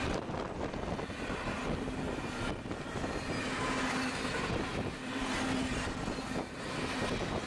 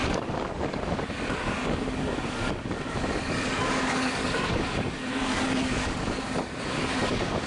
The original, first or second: first